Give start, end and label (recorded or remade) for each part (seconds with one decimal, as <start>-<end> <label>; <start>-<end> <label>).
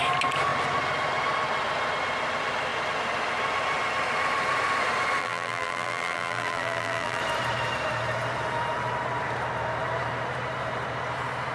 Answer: 0.0-5.2 recorded; 5.2-7.2 remade; 7.2-11.5 recorded